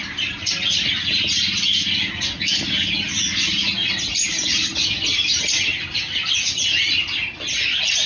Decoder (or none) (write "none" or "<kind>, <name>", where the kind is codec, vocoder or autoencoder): none